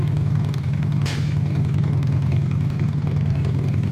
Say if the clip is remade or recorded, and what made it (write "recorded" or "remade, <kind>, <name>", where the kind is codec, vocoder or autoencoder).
remade, codec, DAC